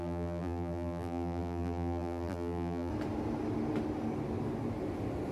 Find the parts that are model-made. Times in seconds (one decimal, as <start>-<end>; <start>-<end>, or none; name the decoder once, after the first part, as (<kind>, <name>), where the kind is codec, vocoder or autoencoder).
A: 0.0-2.9 (vocoder, BigVGAN v2)